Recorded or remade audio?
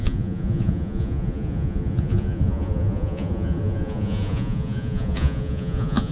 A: remade